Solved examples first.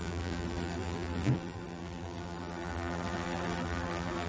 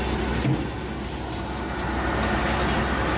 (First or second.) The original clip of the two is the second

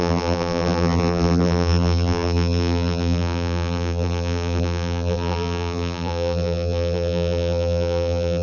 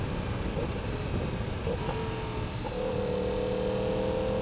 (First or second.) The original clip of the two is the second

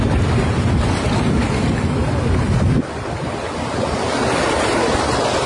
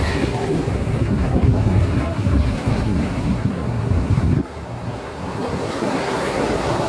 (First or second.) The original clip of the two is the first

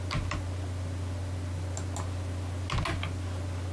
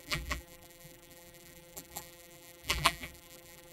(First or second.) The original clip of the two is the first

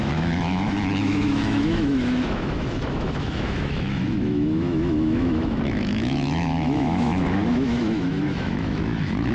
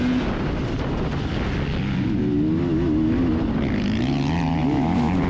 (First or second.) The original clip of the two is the second